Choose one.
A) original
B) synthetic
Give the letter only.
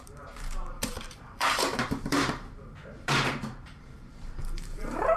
B